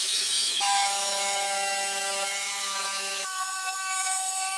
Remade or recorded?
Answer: remade